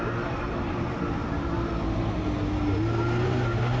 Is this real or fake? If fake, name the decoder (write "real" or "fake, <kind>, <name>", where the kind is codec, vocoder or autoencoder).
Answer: real